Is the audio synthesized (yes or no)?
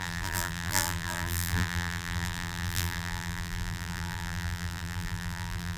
yes